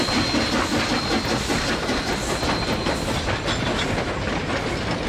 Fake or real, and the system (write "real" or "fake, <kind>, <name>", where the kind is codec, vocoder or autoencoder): real